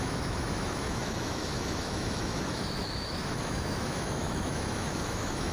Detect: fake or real fake